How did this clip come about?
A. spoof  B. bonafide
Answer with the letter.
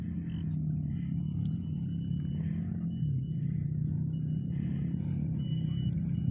B